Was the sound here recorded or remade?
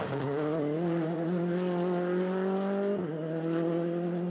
recorded